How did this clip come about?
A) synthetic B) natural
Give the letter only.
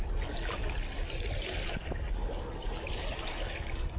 B